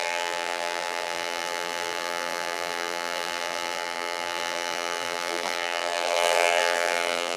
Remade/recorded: remade